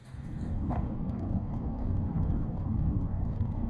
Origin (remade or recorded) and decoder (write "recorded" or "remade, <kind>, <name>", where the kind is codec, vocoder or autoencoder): remade, codec, DAC